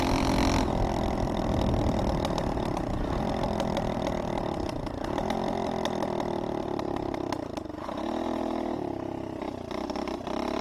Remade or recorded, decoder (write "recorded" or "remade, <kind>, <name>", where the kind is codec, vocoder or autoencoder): recorded